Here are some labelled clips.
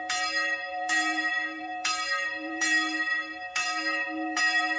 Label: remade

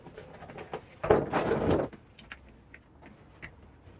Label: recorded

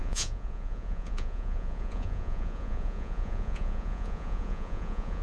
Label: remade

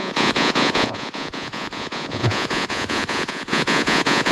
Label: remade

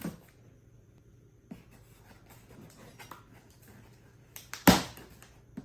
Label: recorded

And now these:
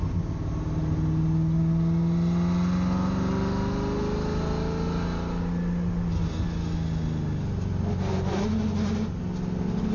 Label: recorded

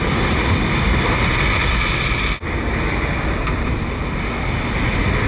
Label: recorded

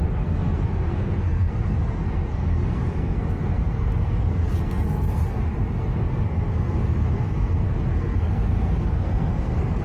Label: remade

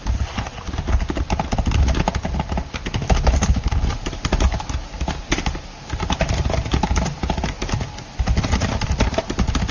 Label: recorded